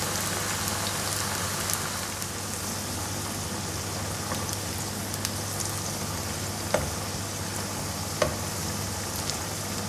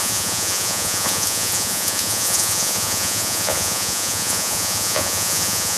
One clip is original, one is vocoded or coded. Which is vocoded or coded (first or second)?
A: second